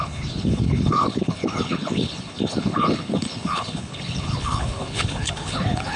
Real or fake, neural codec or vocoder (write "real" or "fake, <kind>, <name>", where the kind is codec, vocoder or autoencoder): fake, codec, HILCodec